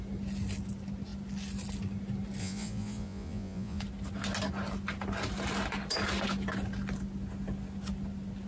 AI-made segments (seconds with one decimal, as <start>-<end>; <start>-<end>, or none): 2.4-3.8

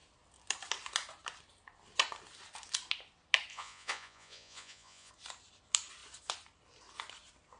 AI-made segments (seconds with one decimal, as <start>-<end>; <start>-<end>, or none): 3.5-5.1

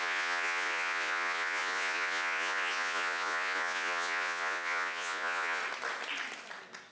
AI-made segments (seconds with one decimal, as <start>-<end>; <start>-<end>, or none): 0.0-5.6

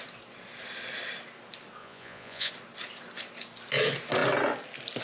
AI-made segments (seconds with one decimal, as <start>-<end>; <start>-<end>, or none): 1.8-2.5